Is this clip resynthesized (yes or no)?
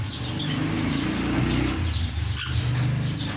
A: no